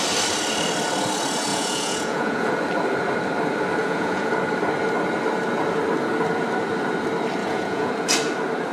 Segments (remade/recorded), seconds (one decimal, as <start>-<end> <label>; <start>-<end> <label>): 0.0-1.5 recorded; 1.5-2.5 remade; 2.5-3.8 recorded; 3.8-4.3 remade; 4.3-7.4 recorded; 7.4-7.9 remade; 7.9-8.7 recorded